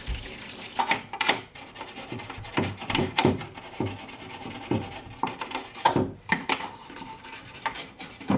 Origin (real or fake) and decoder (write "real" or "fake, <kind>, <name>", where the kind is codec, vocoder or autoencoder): fake, vocoder, BigVGAN v2